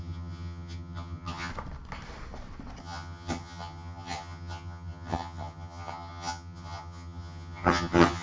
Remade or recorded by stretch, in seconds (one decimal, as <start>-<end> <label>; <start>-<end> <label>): 0.0-1.5 remade; 1.5-2.8 recorded; 2.8-8.2 remade